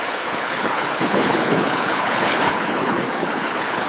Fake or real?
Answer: fake